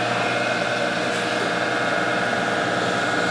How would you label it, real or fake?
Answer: real